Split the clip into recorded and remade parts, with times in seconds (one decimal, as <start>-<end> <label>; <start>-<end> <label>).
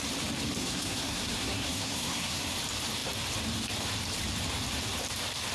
0.0-0.6 recorded; 0.6-2.6 remade; 2.6-5.5 recorded